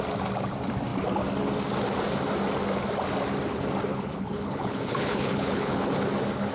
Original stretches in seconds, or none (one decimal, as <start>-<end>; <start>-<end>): 0.0-3.9; 5.9-6.5